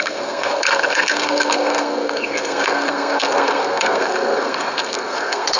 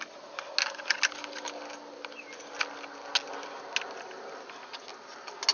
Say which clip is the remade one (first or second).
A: first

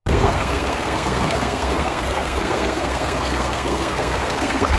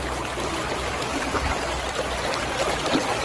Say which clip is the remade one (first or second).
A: first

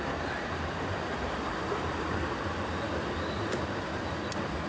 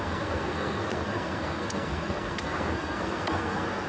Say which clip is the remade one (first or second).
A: second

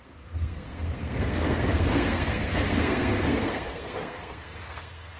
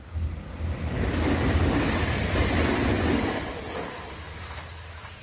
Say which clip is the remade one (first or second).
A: first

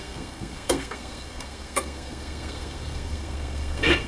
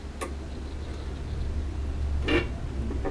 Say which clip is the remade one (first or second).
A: first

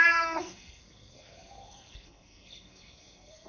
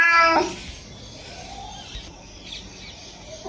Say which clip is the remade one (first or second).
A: first